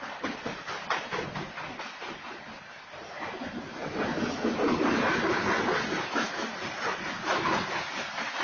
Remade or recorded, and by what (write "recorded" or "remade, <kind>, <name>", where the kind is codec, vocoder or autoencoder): recorded